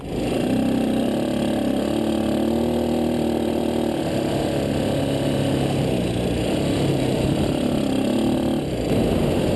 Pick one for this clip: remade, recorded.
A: recorded